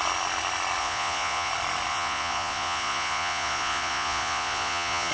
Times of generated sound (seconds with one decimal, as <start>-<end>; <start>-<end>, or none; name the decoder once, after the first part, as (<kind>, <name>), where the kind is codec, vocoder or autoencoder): 0.8-1.5 (vocoder, Vocos); 1.9-5.1